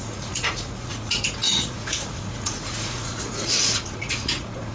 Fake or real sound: fake